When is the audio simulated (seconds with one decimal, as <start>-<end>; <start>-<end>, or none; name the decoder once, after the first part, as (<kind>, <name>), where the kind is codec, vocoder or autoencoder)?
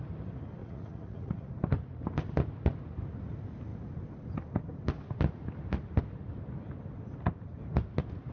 0.6-1.5 (vocoder, Vocos)